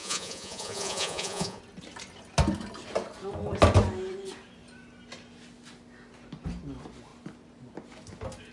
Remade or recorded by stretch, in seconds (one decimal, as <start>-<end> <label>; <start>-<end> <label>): 0.0-1.6 remade; 1.6-8.5 recorded

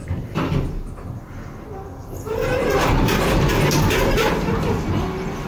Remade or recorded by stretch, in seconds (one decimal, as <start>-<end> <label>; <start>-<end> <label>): 0.0-2.6 recorded; 2.6-4.6 remade; 4.6-5.5 recorded

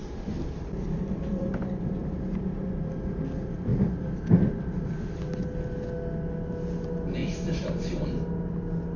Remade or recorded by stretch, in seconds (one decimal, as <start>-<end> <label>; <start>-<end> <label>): 0.0-1.6 remade; 1.6-3.7 recorded; 3.7-4.9 remade; 4.9-7.2 recorded; 7.2-8.0 remade; 8.0-9.0 recorded

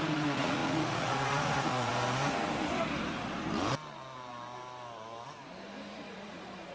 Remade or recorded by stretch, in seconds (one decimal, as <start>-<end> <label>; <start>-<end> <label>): 0.0-1.9 remade; 1.9-5.9 recorded; 5.9-6.7 remade